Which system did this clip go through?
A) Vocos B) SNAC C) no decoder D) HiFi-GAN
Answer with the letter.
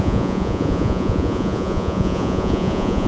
A